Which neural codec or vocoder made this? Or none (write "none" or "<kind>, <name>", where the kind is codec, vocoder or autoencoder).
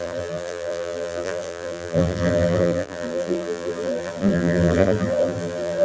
vocoder, BigVGAN v2